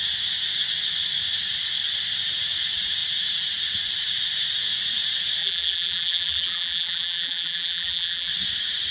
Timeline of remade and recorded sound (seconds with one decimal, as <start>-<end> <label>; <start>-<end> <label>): 0.0-5.4 recorded; 5.4-8.3 remade; 8.3-8.9 recorded